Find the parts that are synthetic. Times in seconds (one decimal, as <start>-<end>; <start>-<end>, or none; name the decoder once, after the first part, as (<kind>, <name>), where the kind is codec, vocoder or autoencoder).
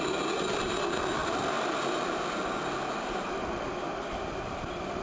none